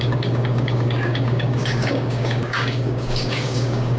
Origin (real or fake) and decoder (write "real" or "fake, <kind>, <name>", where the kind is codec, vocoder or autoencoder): fake, codec, DAC